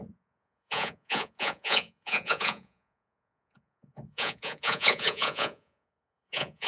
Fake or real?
fake